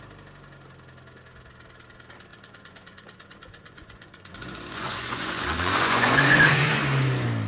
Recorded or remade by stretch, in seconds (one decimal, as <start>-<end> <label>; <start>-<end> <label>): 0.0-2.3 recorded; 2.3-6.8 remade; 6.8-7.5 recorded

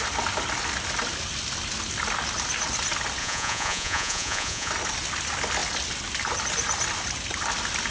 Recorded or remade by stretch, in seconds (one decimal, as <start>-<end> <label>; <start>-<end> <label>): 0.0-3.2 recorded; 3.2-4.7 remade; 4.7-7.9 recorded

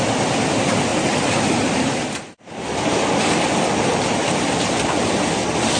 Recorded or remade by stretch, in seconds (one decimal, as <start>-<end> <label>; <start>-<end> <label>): 0.0-5.8 recorded